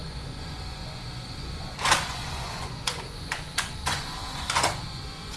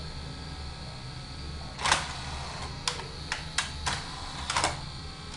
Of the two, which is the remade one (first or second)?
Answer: first